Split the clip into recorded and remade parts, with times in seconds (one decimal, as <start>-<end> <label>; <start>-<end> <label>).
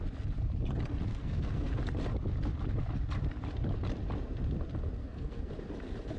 0.0-1.1 recorded; 1.1-1.7 remade; 1.7-5.0 recorded; 5.0-5.5 remade; 5.5-6.2 recorded